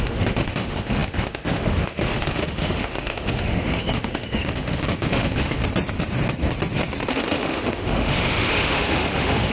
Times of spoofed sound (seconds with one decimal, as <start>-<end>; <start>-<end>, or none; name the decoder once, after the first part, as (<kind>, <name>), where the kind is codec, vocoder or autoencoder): 0.0-5.6 (autoencoder, DAC-VAE); 7.1-9.5